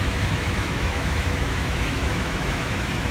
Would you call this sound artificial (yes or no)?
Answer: yes